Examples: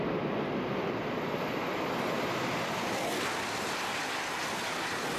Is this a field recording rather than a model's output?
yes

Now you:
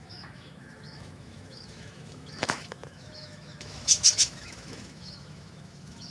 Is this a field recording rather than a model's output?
no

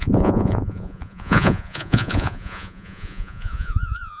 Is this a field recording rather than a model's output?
no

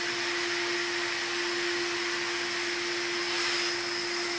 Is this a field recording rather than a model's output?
yes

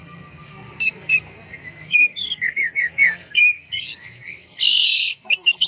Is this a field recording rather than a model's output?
no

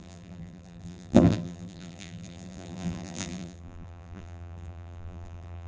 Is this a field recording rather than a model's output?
no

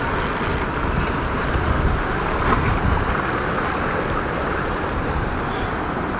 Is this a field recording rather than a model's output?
yes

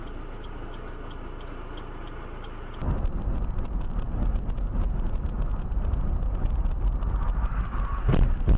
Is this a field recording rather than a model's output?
yes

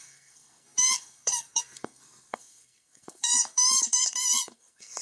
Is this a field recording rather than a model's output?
no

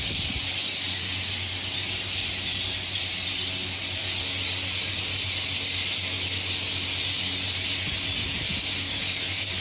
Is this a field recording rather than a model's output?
yes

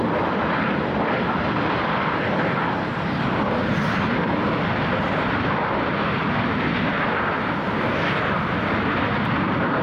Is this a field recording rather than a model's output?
yes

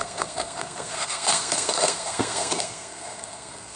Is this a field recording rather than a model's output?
no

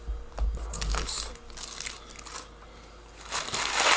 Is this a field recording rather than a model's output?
yes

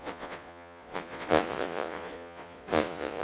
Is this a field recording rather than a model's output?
no